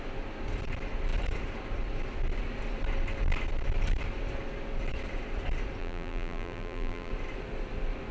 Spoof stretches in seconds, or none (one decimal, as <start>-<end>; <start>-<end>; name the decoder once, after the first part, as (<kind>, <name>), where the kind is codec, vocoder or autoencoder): 5.8-7.1 (vocoder, BigVGAN v2)